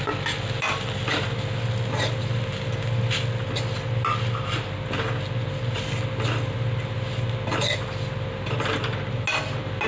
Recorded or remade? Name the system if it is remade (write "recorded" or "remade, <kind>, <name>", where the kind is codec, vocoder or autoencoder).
recorded